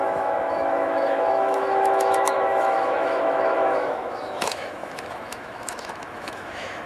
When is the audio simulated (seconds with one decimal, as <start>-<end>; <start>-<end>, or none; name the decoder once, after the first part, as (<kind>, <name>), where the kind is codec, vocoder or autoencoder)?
0.0-6.9 (autoencoder, DAC-VAE)